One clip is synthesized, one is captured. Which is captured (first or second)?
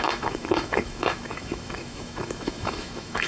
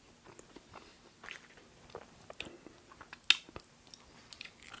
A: second